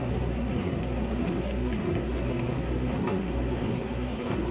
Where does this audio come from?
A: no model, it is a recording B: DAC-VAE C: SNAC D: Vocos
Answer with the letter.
C